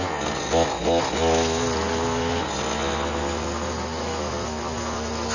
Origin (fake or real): real